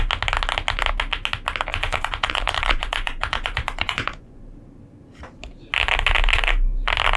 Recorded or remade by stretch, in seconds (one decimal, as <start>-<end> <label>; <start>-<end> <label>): 0.0-1.7 recorded; 1.7-4.4 remade; 4.4-7.2 recorded